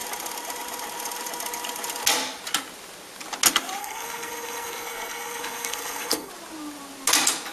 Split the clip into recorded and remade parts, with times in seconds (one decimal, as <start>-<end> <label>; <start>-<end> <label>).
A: 0.0-3.8 recorded; 3.8-6.3 remade; 6.3-7.5 recorded